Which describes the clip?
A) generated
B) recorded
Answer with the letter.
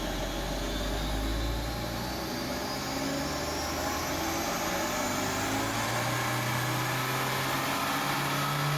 B